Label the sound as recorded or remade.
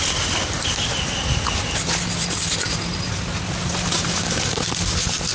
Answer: recorded